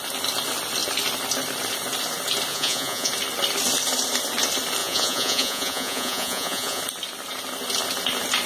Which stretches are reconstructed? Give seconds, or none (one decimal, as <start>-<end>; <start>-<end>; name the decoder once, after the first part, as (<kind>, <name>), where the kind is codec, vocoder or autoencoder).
2.5-3.1 (vocoder, Vocos); 4.8-6.8